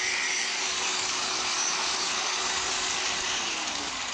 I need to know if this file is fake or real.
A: fake